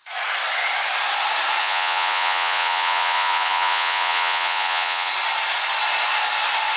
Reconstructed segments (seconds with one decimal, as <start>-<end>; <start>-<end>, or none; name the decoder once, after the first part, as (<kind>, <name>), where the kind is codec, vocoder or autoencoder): 1.6-5.1 (vocoder, Vocos)